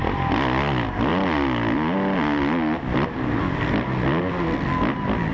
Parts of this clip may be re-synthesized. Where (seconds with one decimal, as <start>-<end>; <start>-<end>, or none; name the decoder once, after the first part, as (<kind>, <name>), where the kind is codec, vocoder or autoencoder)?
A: none